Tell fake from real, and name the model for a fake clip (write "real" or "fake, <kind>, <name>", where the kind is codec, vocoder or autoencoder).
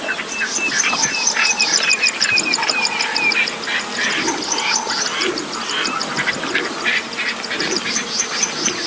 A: real